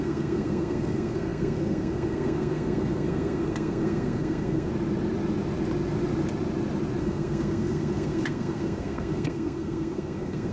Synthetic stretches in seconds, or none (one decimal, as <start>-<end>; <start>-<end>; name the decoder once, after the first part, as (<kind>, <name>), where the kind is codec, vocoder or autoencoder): 0.0-4.7 (codec, SNAC); 7.0-10.5